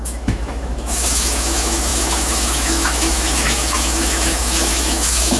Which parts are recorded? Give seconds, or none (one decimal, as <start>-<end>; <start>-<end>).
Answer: none